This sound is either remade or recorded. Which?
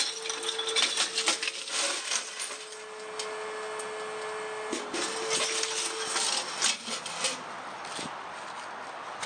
recorded